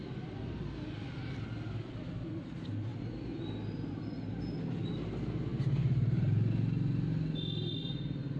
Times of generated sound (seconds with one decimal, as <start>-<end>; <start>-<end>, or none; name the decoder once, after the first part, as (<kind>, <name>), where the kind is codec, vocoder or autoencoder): none